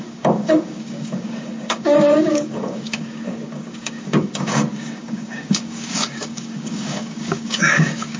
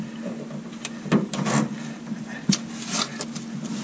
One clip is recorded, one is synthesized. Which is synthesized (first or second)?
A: first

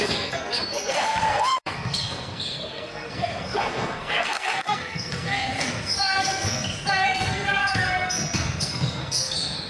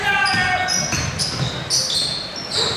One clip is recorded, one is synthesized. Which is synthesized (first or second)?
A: first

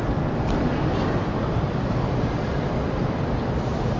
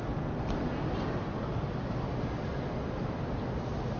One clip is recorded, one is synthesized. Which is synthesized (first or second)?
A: first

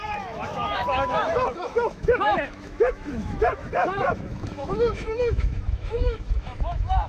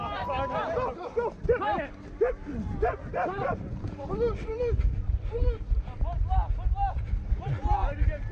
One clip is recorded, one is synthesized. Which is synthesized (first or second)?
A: first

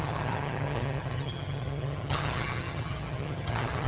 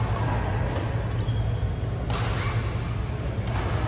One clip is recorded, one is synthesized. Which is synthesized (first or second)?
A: first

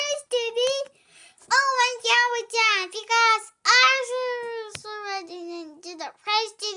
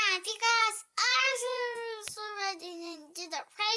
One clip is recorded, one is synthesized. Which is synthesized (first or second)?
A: second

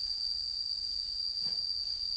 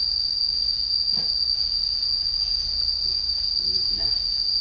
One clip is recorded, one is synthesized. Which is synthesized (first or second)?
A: first